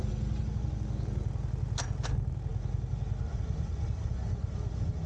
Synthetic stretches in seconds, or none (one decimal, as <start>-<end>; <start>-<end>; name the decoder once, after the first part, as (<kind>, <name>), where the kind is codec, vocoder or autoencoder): none